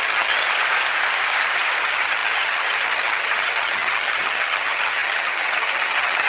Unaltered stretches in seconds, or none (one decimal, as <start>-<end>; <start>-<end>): 0.4-1.8

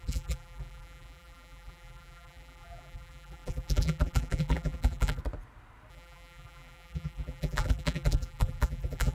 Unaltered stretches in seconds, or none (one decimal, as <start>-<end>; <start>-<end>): 5.2-5.9

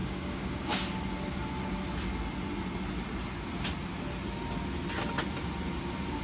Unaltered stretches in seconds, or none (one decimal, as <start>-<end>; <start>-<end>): 0.9-6.2